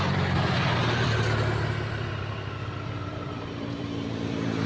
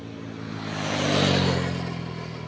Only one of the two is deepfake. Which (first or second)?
first